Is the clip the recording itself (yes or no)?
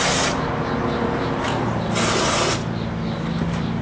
yes